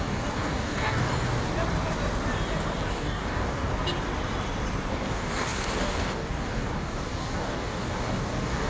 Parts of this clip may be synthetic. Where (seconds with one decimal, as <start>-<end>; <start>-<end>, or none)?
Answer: 0.0-1.1; 2.9-3.7; 4.9-8.7